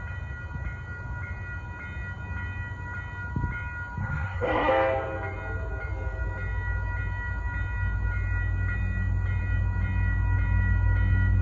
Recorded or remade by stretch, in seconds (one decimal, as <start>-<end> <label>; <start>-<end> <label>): 0.0-4.0 recorded; 4.0-4.7 remade; 4.7-11.4 recorded